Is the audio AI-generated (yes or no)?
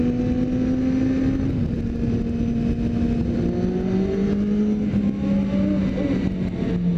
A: no